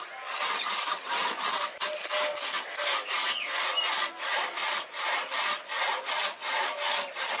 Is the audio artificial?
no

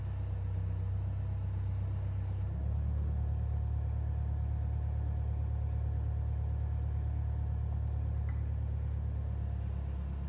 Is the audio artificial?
no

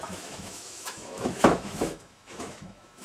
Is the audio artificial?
yes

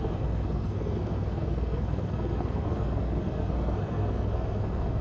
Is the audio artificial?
yes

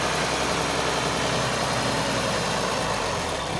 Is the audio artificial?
no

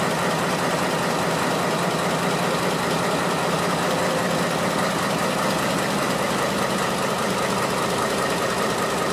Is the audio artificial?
no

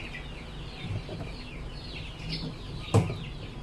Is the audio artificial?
no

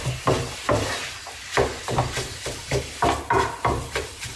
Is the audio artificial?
no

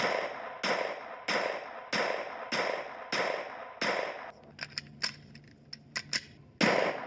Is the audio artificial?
no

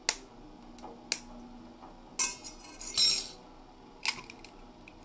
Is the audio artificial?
no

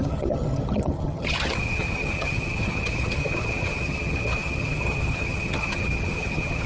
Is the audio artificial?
yes